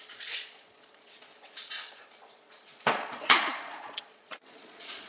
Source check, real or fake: fake